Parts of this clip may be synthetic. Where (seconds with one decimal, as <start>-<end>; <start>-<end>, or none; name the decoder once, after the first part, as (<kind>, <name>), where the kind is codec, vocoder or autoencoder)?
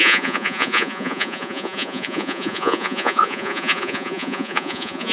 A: 0.0-5.1 (vocoder, Vocos)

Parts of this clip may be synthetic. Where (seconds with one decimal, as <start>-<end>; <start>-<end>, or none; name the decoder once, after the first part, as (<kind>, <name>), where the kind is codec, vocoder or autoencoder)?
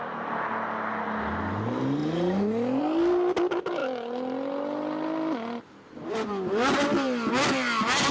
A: none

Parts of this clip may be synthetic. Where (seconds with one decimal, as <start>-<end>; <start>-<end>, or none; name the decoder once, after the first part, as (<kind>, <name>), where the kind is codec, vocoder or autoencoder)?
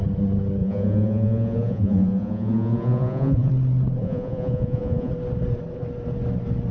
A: 0.6-3.5 (vocoder, Vocos); 4.0-5.1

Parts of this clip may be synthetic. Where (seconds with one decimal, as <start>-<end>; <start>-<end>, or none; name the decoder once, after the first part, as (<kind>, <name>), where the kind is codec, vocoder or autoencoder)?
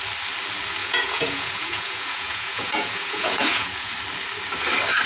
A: 0.8-3.9 (vocoder, Vocos)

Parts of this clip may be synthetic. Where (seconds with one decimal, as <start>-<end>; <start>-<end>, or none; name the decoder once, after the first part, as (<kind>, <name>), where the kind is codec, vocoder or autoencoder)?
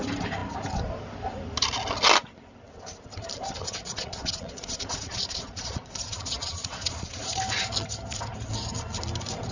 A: 3.6-7.4 (vocoder, Vocos)